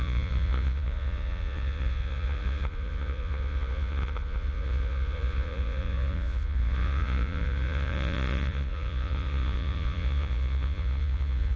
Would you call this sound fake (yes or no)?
yes